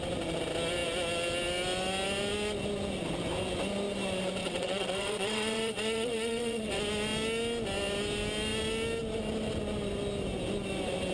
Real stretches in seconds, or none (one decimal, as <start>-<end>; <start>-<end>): 0.0-4.4; 6.8-11.1